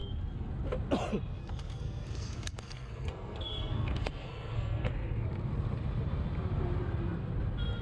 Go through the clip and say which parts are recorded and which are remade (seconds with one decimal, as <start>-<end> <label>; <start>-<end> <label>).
0.0-0.5 remade; 0.5-1.4 recorded; 1.4-4.9 remade; 4.9-7.8 recorded